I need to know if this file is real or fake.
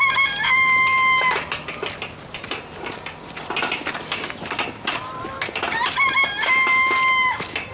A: real